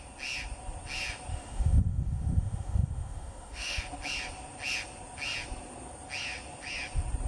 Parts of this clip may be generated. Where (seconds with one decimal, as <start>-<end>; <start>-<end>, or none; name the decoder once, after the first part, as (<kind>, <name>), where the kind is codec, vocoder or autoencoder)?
1.3-3.8 (autoencoder, DAC-VAE)